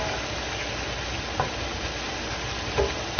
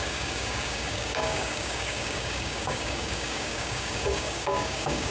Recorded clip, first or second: first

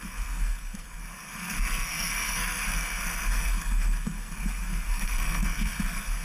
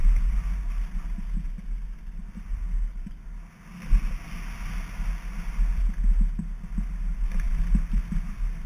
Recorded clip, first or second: second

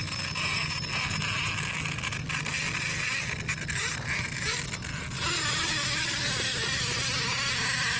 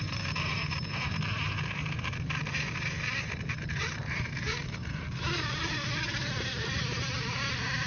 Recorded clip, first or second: first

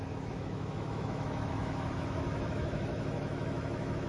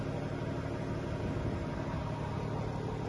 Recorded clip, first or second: second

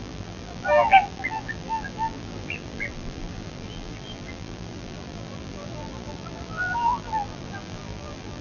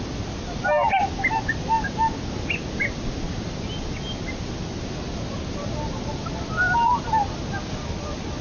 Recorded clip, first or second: second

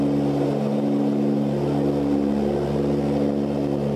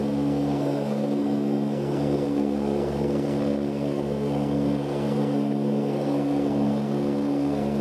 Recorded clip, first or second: first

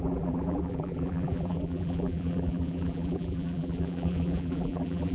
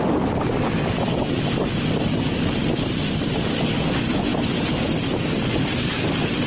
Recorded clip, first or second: second